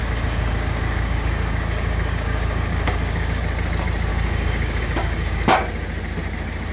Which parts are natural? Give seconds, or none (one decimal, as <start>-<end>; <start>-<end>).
3.4-4.1; 5.6-6.7